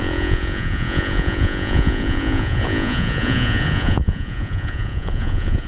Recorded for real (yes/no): no